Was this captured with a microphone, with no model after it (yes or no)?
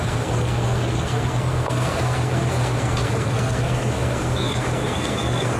no